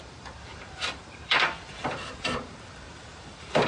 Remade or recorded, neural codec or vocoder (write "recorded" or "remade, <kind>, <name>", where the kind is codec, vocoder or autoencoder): remade, vocoder, BigVGAN v2